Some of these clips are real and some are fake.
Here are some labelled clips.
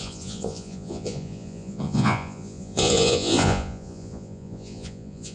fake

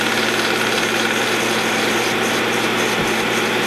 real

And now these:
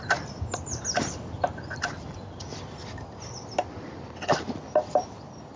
real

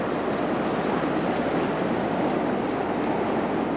real